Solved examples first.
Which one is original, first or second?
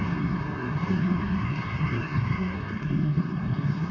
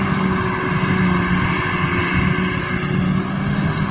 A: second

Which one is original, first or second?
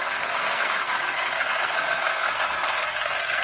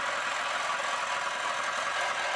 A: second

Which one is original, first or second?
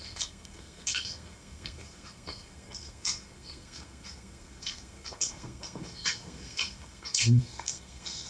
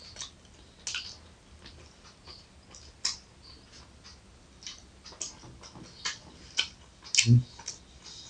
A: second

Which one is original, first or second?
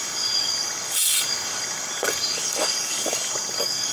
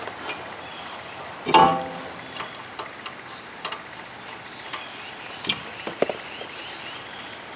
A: second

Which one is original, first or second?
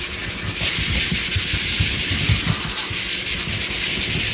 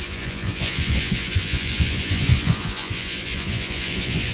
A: first